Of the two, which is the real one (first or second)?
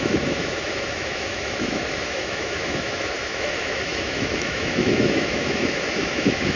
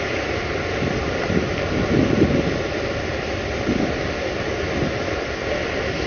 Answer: second